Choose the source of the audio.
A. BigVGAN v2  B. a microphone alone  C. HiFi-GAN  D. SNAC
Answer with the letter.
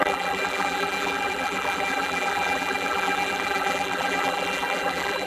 A